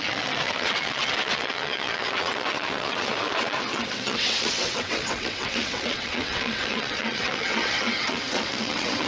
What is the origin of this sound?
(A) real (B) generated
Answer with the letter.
B